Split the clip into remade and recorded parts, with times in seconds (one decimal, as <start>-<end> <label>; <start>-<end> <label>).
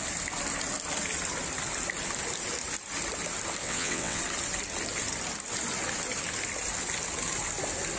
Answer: 0.0-3.6 recorded; 3.6-4.2 remade; 4.2-8.0 recorded